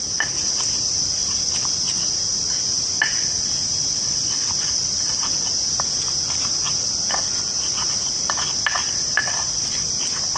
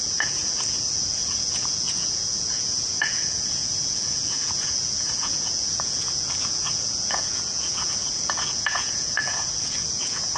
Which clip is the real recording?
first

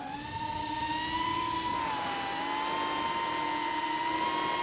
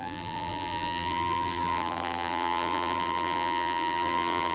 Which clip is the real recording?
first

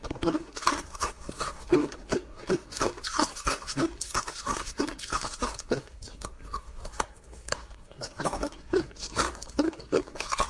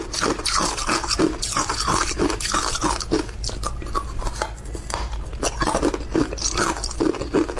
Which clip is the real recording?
second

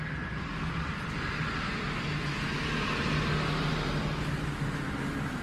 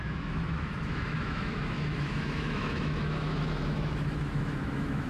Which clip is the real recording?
first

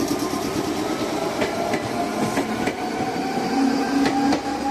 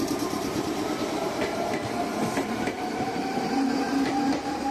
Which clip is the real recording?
first